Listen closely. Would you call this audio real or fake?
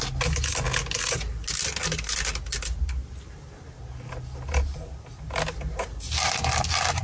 real